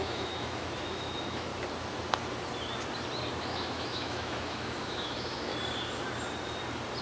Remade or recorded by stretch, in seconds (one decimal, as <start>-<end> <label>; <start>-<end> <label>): 0.0-1.5 remade; 1.5-3.4 recorded; 3.4-5.5 remade; 5.5-7.0 recorded